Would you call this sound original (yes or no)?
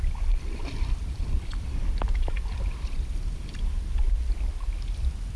yes